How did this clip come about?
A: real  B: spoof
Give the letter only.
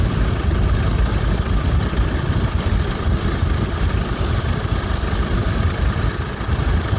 A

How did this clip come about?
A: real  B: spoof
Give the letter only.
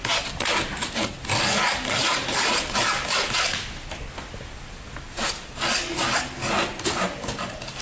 A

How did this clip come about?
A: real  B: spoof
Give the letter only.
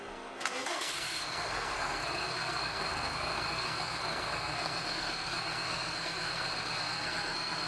B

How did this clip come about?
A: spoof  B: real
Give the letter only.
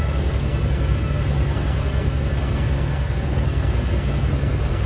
A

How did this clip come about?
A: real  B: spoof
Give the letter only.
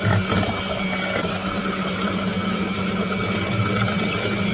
A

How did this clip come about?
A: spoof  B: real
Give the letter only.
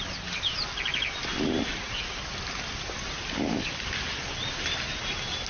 B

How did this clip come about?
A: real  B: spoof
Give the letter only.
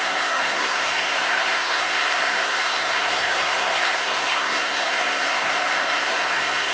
B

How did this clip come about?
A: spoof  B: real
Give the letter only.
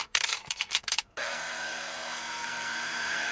A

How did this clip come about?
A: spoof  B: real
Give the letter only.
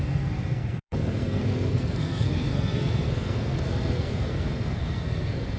A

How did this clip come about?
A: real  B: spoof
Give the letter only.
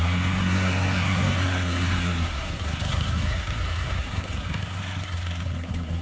B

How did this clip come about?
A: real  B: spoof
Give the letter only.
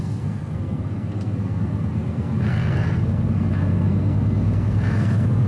B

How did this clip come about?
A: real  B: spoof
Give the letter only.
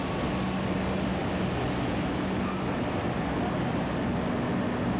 A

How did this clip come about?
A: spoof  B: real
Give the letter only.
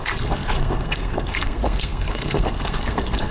A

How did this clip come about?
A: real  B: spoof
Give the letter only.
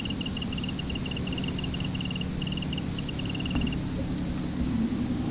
A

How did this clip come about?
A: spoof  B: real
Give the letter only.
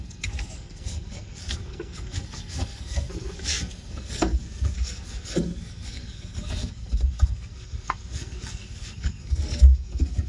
A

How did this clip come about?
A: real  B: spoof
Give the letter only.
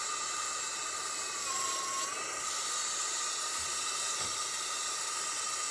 A